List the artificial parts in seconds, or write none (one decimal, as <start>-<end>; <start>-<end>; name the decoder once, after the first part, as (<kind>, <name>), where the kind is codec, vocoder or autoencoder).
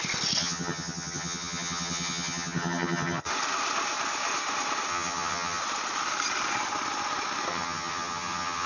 0.4-3.3 (vocoder, HiFi-GAN); 4.9-5.6; 7.5-8.7